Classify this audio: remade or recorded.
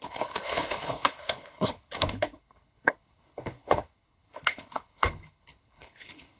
remade